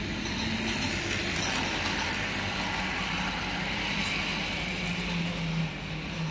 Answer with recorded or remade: recorded